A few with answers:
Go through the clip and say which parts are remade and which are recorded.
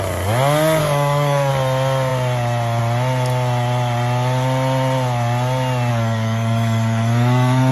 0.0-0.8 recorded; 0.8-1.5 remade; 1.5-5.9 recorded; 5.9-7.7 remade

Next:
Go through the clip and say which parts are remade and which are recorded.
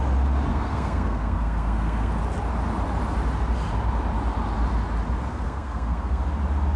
0.0-0.5 recorded; 0.5-2.1 remade; 2.1-5.3 recorded; 5.3-6.2 remade; 6.2-6.8 recorded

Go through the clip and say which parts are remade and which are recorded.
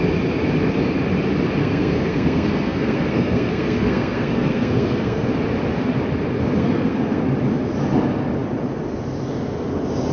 0.0-1.6 recorded; 1.6-5.3 remade; 5.3-6.6 recorded; 6.6-7.2 remade; 7.2-10.1 recorded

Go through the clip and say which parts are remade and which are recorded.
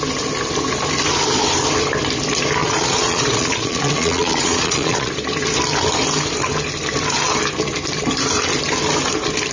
0.0-2.6 recorded; 2.6-5.1 remade; 5.1-9.5 recorded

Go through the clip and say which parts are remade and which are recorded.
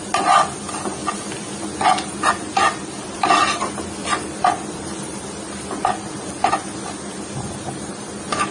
0.0-8.5 recorded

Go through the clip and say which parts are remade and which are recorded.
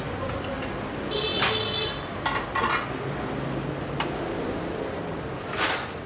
0.0-6.1 recorded